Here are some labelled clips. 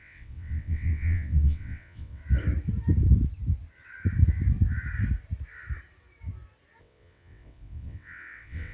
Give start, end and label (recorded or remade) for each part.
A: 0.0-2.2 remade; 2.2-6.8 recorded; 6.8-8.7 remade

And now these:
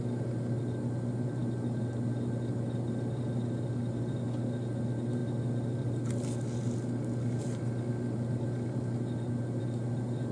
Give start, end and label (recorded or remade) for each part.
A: 0.0-10.3 recorded